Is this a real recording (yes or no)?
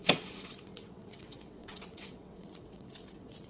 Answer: no